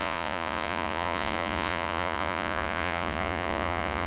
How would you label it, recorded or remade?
remade